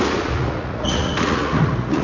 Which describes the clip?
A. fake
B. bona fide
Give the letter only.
A